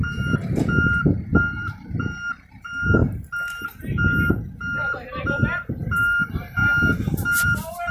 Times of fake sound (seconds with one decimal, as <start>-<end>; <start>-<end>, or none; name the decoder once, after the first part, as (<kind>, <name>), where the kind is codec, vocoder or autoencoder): 0.0-6.6 (vocoder, BigVGAN v2); 7.4-7.9

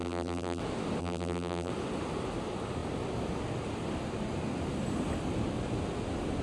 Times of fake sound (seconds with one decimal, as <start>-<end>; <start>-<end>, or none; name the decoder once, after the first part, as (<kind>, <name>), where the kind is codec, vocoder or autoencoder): 0.0-0.6 (vocoder, BigVGAN v2); 1.0-1.7

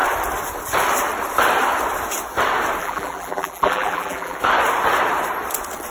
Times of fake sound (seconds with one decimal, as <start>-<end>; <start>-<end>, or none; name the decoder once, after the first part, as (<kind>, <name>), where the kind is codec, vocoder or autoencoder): 2.8-4.4 (vocoder, BigVGAN v2)

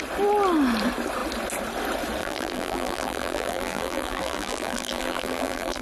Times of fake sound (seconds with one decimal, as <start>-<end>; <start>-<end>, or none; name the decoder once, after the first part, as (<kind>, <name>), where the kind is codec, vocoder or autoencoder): 2.2-5.8 (vocoder, BigVGAN v2)

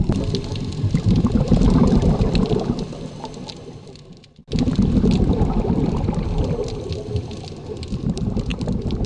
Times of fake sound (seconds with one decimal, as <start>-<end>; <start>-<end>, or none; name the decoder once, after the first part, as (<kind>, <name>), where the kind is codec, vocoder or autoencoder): 8.5-9.1 (vocoder, BigVGAN v2)